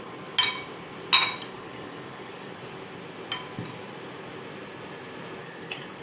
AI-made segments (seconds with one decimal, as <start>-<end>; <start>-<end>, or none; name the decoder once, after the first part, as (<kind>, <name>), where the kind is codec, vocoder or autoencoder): 1.5-2.6 (codec, DAC); 5.4-6.0